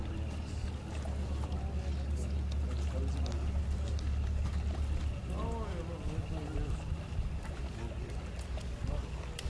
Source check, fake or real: real